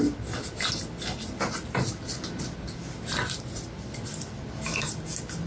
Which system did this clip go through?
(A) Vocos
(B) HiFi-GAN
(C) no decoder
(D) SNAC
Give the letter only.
C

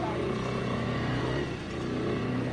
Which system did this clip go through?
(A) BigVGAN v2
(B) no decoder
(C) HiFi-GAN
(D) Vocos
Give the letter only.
D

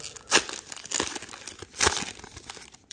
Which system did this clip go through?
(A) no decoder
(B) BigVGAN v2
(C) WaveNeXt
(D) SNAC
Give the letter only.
A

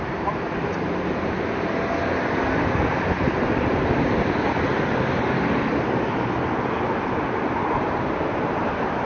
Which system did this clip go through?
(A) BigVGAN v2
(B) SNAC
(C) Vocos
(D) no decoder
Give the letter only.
D